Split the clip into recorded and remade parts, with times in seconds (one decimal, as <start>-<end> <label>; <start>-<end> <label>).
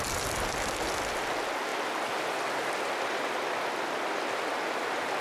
0.0-5.2 recorded